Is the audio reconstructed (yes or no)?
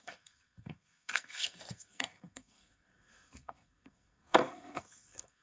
yes